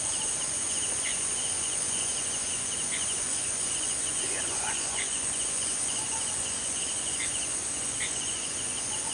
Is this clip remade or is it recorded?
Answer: remade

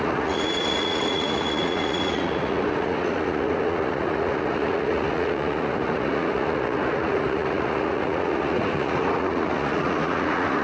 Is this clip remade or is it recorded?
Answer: remade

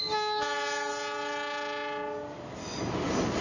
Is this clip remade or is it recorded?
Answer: recorded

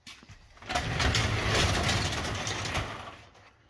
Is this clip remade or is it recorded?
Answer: recorded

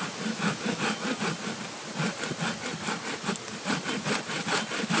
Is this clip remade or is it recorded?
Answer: recorded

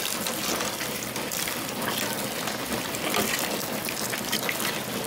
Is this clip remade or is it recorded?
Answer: recorded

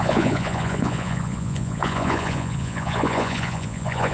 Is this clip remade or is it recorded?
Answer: remade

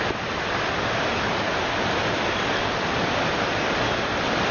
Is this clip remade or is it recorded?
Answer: recorded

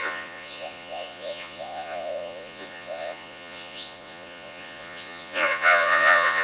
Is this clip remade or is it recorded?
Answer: remade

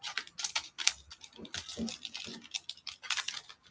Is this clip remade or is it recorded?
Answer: recorded